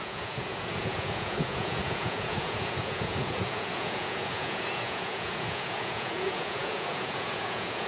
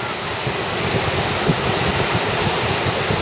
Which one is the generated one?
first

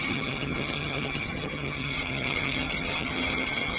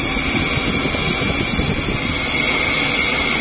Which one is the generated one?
first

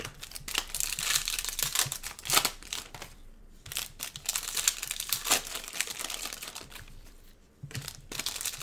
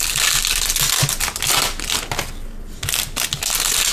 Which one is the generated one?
first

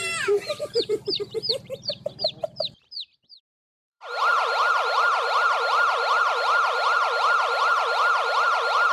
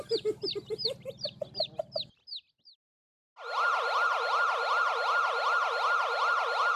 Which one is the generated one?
first